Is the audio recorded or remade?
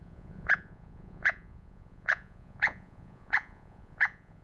remade